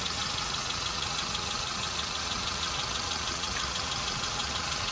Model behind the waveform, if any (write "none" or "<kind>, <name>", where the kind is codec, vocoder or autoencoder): vocoder, Vocos